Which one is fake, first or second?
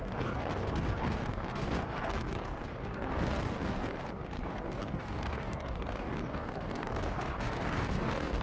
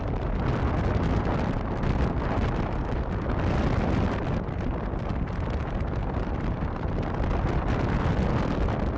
first